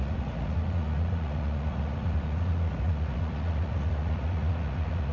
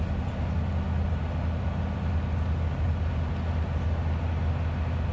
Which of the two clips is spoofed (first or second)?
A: first